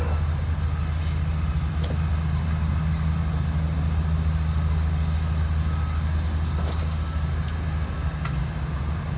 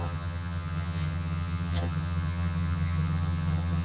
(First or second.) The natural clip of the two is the first